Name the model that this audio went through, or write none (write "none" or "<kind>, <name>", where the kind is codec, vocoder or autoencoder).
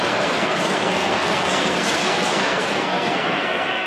codec, SNAC